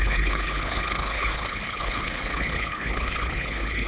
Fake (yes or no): yes